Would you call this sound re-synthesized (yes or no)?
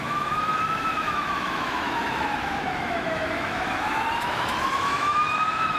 yes